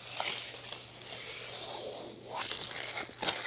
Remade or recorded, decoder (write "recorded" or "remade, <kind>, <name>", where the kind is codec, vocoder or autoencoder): recorded